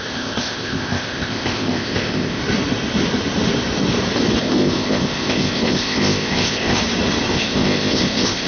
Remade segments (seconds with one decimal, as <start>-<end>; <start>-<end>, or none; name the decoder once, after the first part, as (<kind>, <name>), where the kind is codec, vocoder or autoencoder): 0.0-2.4 (codec, ZipCodec); 4.4-6.8; 7.3-8.5